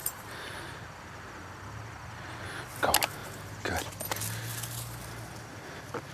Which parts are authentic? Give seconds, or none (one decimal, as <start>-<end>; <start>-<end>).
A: 0.7-3.2; 3.9-6.1